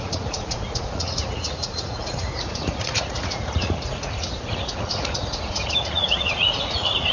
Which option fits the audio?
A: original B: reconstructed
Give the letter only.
B